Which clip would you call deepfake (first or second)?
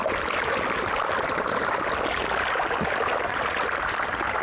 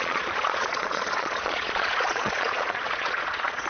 second